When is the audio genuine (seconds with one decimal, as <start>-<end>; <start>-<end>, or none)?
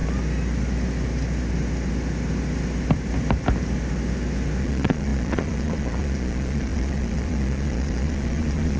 0.0-4.6